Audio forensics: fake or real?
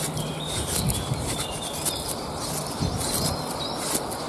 real